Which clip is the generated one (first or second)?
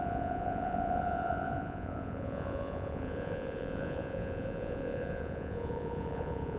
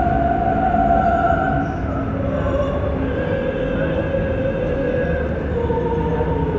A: first